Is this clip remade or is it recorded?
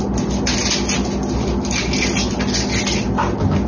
recorded